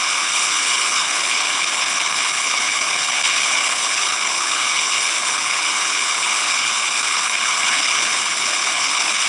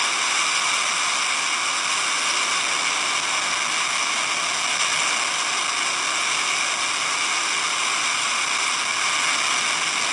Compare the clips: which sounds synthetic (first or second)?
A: first